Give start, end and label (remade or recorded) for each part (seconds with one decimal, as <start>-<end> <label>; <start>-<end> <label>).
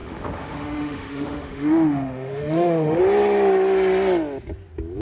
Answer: 0.0-3.0 remade; 3.0-5.0 recorded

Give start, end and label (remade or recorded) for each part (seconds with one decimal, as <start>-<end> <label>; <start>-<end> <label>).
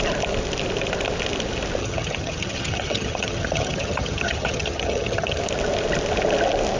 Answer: 0.0-1.8 recorded; 1.8-5.4 remade; 5.4-6.8 recorded